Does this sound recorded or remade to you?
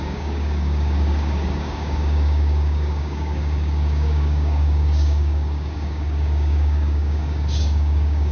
remade